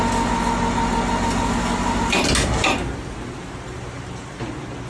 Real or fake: real